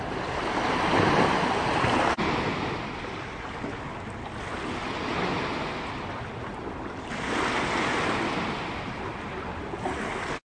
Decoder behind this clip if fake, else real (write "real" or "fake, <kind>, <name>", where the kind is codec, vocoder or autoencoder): real